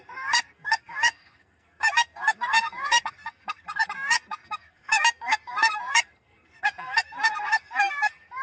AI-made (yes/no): yes